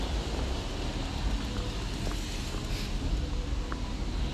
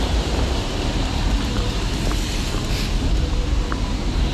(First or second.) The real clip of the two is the first